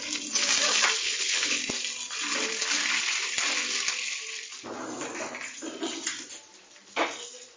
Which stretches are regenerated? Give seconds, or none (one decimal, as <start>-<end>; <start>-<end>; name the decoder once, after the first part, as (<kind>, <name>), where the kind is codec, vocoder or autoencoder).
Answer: 1.0-1.6 (codec, HILCodec)